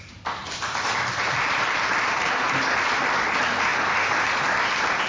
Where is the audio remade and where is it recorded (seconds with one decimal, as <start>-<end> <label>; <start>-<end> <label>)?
0.0-0.4 recorded; 0.4-3.0 remade; 3.0-5.1 recorded